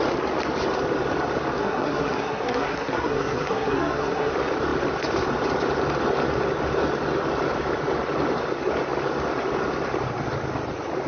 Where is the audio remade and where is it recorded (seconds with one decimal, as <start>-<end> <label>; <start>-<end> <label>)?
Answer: 0.0-1.6 recorded; 1.6-4.3 remade; 4.3-11.1 recorded